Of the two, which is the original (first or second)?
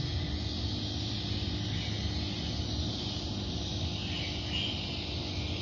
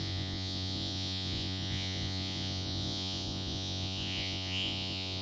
first